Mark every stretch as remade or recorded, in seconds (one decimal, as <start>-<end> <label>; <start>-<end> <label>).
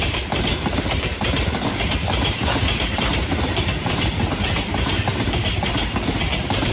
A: 0.0-6.7 remade